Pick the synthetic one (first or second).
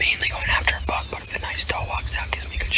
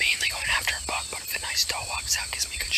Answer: second